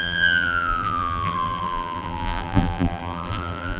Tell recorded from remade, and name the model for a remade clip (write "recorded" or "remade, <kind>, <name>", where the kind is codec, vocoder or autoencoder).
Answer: remade, vocoder, BigVGAN v2